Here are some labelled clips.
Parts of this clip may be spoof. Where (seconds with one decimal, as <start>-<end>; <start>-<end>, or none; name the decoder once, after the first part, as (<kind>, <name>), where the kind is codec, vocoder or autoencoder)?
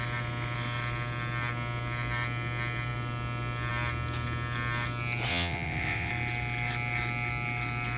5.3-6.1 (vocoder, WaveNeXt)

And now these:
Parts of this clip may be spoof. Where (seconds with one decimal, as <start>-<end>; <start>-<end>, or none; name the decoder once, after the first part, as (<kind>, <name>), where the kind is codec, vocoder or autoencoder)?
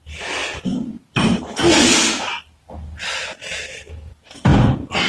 none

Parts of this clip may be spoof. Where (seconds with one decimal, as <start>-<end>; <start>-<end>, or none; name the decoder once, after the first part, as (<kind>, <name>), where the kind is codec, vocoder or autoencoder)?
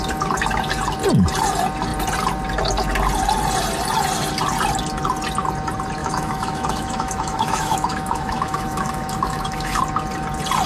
6.0-9.8 (autoencoder, DAC-VAE)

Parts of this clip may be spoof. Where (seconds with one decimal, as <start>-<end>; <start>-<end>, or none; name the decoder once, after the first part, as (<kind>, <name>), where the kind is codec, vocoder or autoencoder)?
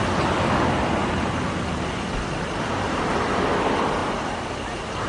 none